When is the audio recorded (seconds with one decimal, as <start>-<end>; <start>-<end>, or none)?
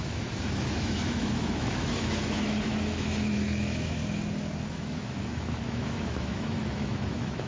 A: 4.0-4.7